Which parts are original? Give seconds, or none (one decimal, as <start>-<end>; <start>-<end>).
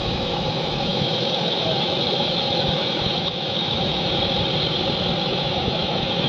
4.2-5.2